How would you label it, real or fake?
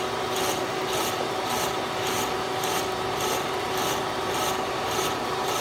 real